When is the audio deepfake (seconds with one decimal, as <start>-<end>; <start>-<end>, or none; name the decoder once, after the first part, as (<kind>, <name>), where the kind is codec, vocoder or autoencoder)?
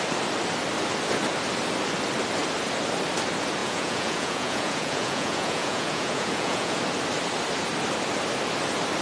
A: 3.6-6.8 (vocoder, Vocos)